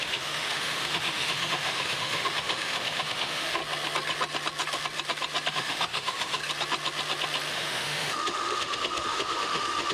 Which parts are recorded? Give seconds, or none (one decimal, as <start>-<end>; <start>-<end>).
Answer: 3.6-5.5; 6.4-7.5